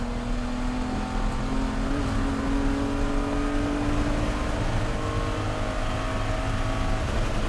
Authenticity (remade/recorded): recorded